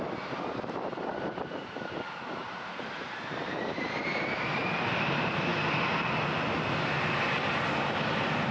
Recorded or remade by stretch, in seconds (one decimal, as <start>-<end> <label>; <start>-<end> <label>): 0.0-5.5 remade; 5.5-8.1 recorded; 8.1-8.5 remade